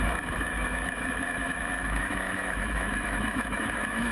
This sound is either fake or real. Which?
fake